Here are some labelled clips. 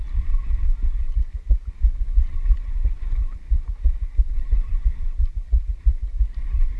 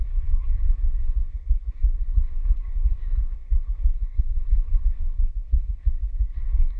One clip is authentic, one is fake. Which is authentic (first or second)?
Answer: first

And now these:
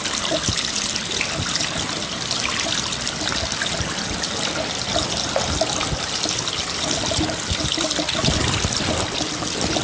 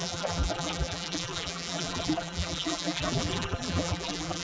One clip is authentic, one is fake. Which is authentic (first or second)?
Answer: first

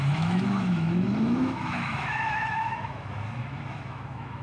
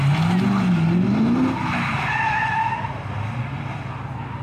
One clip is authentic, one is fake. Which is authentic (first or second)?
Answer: second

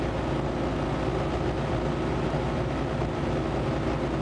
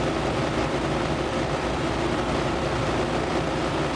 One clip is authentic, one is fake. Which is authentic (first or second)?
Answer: first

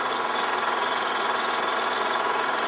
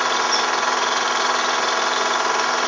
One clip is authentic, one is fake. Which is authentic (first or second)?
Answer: second